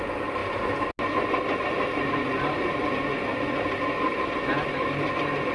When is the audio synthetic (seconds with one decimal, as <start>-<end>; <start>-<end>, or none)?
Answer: none